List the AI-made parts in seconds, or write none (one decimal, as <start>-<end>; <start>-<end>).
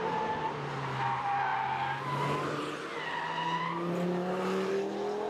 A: none